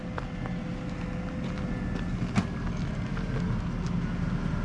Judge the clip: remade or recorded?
recorded